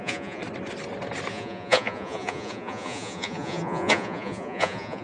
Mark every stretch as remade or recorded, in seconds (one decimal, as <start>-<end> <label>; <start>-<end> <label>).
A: 0.0-0.4 remade; 0.4-1.3 recorded; 1.3-5.0 remade